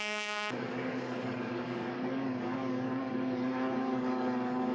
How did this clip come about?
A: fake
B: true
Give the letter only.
A